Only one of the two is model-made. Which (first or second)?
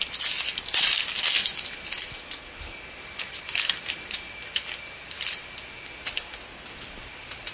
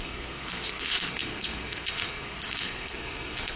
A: second